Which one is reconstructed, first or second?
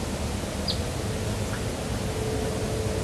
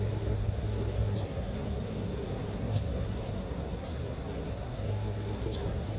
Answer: second